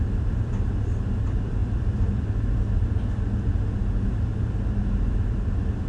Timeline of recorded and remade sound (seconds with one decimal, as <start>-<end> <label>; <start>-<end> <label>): 0.0-5.9 remade